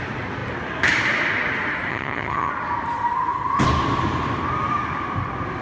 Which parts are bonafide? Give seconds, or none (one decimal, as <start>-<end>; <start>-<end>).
0.0-1.9; 2.5-5.6